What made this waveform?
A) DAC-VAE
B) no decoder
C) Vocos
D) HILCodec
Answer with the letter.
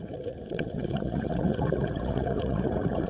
C